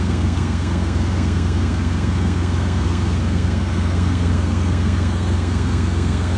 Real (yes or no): no